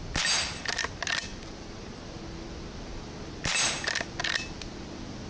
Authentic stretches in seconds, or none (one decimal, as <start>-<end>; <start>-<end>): 0.0-1.3; 2.1-5.3